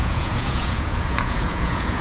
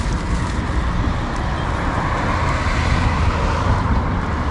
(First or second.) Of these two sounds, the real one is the second